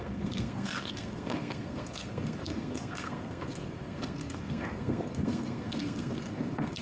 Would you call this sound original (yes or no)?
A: no